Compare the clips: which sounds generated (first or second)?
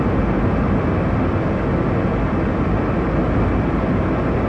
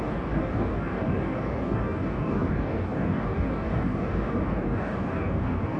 second